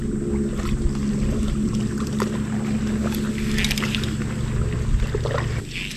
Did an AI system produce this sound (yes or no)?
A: no